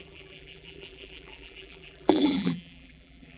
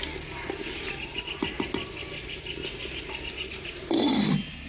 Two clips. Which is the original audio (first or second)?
second